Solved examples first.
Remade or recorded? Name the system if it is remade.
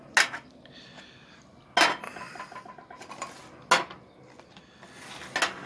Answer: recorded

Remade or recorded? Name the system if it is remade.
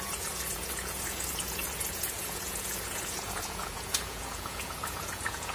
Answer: remade, vocoder, Vocos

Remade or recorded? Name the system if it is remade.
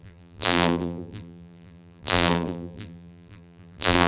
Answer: remade, vocoder, BigVGAN v2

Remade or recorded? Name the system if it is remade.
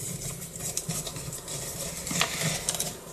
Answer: recorded